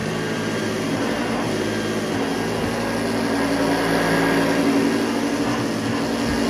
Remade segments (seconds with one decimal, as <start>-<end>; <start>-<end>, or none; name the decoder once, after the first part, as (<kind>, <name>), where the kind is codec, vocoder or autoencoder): 0.0-1.5 (vocoder, BigVGAN v2)